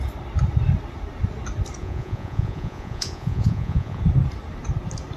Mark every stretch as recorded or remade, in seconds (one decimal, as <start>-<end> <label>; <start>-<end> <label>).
0.0-1.8 recorded; 1.8-4.0 remade; 4.0-5.2 recorded